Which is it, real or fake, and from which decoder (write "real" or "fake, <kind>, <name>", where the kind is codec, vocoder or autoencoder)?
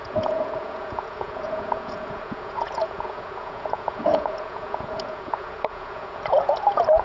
fake, vocoder, Vocos